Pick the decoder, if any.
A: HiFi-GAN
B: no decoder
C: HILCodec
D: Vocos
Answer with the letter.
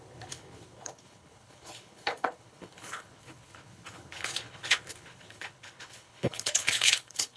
C